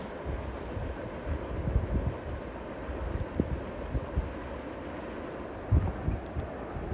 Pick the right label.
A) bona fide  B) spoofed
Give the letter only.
A